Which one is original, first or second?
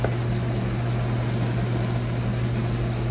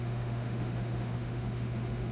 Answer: first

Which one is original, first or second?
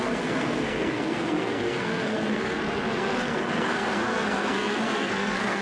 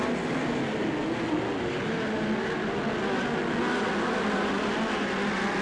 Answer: second